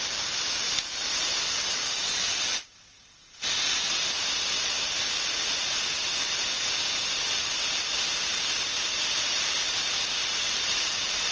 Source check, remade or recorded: recorded